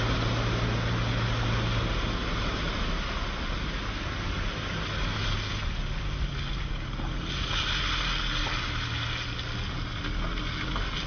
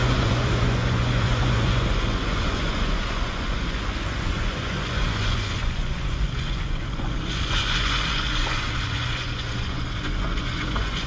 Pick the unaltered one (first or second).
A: first